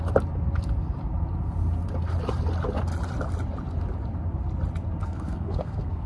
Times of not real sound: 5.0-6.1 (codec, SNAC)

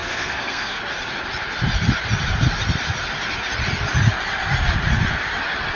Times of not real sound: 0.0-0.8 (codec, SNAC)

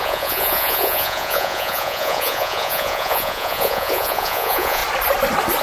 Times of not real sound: 0.0-4.8 (vocoder, Vocos)